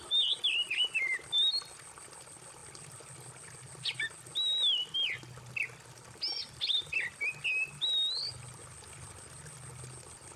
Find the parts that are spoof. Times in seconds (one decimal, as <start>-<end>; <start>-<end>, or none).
none